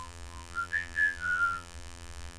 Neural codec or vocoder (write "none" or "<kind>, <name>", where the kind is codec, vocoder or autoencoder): vocoder, BigVGAN v2